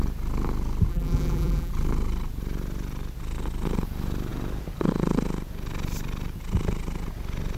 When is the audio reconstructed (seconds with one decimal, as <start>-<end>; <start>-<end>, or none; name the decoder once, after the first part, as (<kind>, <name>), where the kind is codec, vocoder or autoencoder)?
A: 0.9-1.7 (vocoder, BigVGAN v2)